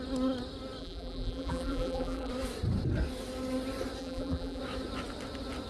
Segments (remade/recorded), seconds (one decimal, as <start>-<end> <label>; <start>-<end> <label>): 0.0-0.8 recorded; 0.8-2.3 remade; 2.3-4.0 recorded; 4.0-4.6 remade; 4.6-5.7 recorded